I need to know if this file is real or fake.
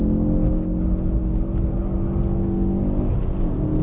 real